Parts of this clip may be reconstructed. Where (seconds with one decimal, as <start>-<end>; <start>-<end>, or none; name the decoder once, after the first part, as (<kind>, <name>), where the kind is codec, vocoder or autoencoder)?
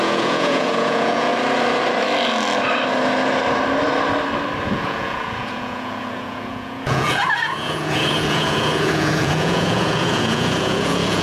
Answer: 0.0-1.3 (vocoder, Vocos); 4.6-11.2